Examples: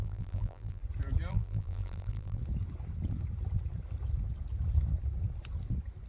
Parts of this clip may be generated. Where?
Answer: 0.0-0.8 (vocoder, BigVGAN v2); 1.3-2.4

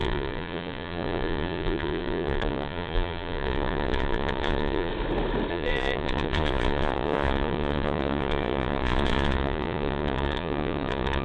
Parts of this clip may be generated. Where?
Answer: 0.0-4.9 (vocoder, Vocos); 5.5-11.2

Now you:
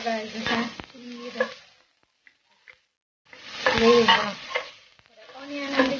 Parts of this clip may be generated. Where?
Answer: 4.2-4.7 (vocoder, Vocos)

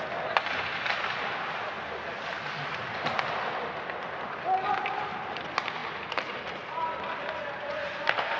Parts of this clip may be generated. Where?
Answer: none

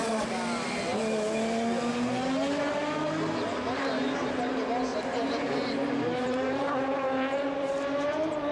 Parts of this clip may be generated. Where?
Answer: 4.9-6.7 (vocoder, BigVGAN v2)

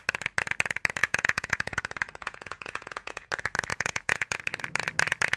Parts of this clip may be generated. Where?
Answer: 1.0-1.8 (vocoder, Vocos); 2.2-3.3; 3.7-4.4